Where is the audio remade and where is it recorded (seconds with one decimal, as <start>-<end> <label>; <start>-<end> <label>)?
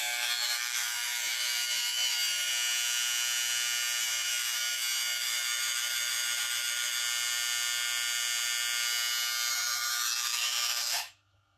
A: 0.0-2.5 remade; 2.5-4.0 recorded; 4.0-7.0 remade; 7.0-9.5 recorded; 9.5-11.6 remade